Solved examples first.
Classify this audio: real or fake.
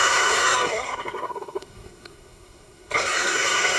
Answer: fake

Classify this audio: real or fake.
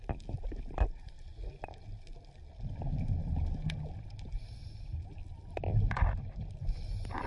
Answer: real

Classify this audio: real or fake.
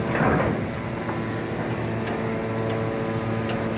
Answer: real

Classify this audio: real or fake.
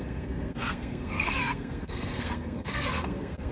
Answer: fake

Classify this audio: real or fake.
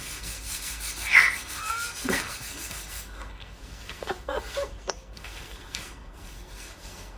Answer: fake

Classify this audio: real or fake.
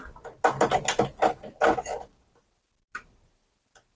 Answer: real